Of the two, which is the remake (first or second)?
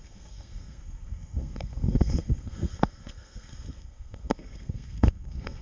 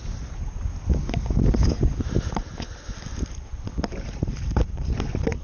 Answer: first